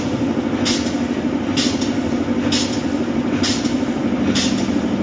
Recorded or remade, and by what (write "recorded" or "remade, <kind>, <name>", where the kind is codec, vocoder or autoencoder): recorded